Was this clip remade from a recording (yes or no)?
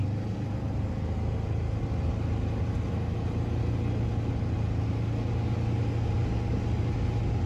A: no